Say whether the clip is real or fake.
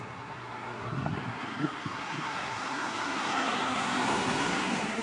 fake